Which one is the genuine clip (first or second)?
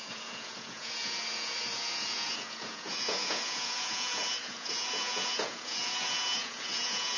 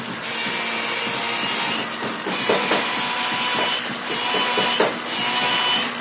second